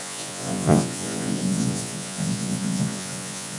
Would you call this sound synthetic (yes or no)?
yes